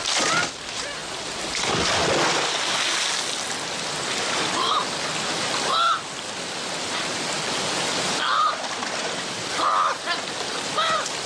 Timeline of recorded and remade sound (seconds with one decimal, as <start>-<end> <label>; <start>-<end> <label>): 0.0-11.3 recorded